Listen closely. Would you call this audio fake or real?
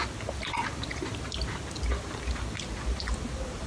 real